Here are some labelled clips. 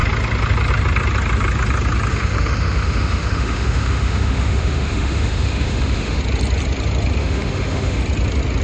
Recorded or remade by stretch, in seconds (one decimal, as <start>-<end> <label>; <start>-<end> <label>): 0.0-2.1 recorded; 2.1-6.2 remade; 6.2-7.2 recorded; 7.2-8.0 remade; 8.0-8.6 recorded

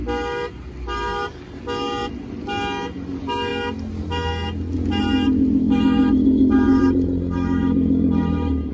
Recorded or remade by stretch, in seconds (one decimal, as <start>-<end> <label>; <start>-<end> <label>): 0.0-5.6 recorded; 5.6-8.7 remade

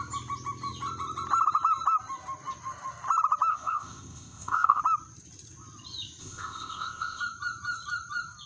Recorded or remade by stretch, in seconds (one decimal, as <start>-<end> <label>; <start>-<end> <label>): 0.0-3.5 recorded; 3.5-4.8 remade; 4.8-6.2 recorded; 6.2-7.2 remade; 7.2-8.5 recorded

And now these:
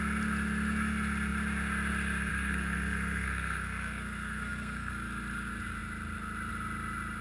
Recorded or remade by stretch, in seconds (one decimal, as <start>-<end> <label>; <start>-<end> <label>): 0.0-2.3 recorded; 2.3-4.9 remade; 4.9-7.2 recorded

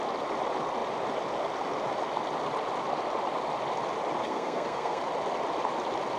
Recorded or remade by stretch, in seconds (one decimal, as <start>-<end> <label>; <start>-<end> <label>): 0.0-4.2 recorded; 4.2-5.0 remade; 5.0-6.2 recorded